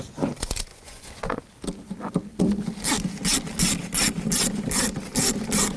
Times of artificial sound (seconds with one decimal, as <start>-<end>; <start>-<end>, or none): 0.7-1.4